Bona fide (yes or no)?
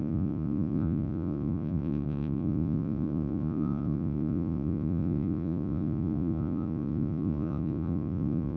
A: no